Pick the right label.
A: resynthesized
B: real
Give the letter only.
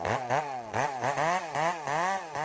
A